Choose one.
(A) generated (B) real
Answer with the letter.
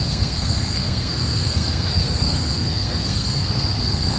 A